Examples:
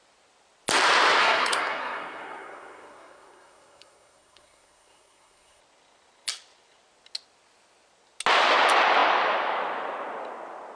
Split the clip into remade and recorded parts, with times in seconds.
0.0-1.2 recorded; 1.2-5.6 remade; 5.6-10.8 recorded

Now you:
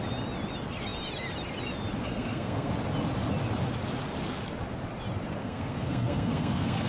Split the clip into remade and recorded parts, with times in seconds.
0.0-2.0 recorded; 2.0-2.7 remade; 2.7-5.4 recorded; 5.4-6.9 remade

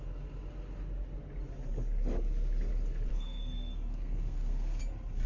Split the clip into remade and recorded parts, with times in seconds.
0.0-3.1 recorded; 3.1-4.8 remade; 4.8-5.3 recorded